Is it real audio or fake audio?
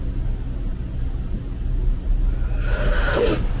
real